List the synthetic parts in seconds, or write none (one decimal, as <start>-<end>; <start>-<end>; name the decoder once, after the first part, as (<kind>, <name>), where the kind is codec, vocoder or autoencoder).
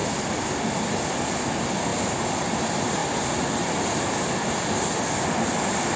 none